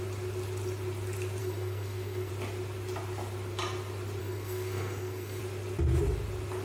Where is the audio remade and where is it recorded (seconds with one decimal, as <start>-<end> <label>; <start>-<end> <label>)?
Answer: 0.0-1.4 recorded; 1.4-2.3 remade; 2.3-4.2 recorded; 4.2-5.4 remade; 5.4-6.6 recorded